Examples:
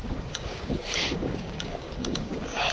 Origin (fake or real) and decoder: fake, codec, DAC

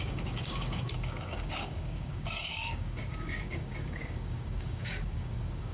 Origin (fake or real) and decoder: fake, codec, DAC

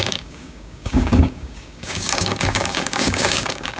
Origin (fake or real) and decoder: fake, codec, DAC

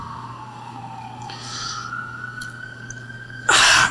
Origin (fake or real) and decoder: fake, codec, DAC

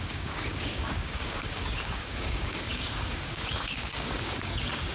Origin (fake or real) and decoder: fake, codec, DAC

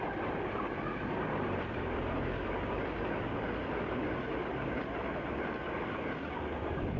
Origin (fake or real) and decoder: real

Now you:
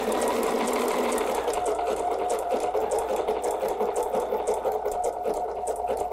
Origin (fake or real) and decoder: real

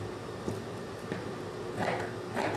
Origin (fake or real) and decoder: real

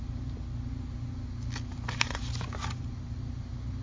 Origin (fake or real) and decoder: real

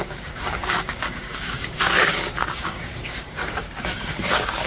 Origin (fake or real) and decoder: fake, codec, DAC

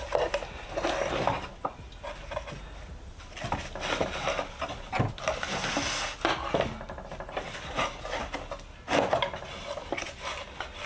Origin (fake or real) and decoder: real